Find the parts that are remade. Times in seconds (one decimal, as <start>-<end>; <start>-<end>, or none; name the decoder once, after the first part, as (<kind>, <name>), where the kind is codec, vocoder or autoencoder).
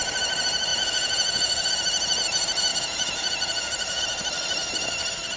0.7-1.7 (vocoder, Vocos); 2.7-4.0